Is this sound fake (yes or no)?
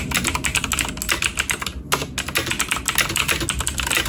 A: no